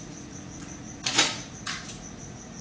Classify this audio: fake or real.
fake